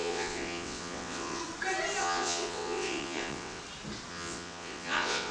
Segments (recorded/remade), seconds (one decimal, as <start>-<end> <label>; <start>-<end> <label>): 0.0-1.4 remade; 1.4-2.0 recorded; 2.0-3.6 remade; 3.6-4.1 recorded; 4.1-5.3 remade